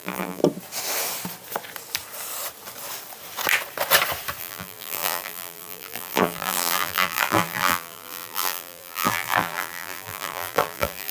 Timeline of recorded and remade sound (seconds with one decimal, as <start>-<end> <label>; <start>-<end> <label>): 0.0-0.4 remade; 0.4-4.4 recorded; 4.4-11.1 remade